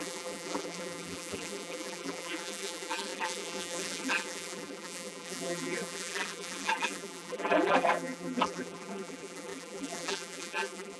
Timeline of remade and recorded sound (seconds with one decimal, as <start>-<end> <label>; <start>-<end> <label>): 0.0-11.0 remade